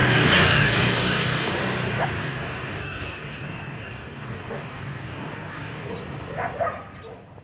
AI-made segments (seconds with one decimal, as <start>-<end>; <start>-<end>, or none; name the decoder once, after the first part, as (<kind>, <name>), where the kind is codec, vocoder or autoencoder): 0.0-1.5 (codec, DAC); 2.2-5.9